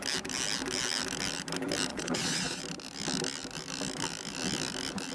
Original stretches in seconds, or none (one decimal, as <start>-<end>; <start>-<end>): 0.0-1.9; 2.6-5.1